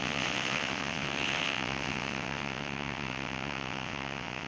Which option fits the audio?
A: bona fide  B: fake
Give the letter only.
B